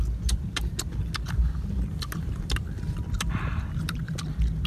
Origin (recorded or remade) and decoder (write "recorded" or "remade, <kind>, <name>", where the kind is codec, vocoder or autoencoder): recorded